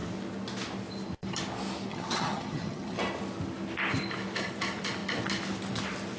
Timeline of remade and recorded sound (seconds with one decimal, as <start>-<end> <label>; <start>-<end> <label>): 0.0-1.9 recorded; 1.9-3.0 remade; 3.0-6.2 recorded